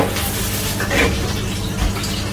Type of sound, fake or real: real